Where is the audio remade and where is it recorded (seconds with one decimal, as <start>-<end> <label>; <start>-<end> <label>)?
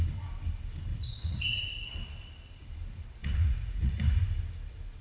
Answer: 0.0-0.9 recorded; 0.9-1.6 remade; 1.6-3.2 recorded; 3.2-4.2 remade; 4.2-5.0 recorded